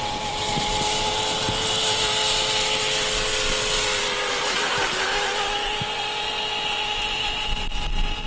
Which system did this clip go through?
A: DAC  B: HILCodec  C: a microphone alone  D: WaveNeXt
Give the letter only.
C